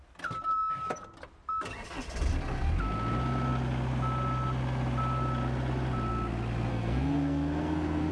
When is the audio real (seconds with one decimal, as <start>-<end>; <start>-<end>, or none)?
0.0-6.7